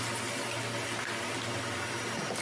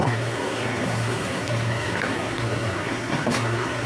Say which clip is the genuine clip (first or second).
first